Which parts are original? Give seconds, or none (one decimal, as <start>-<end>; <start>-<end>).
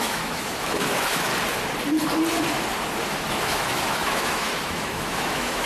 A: 1.3-3.3